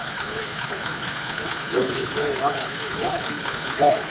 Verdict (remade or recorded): remade